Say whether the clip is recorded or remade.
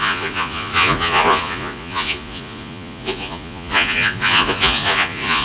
remade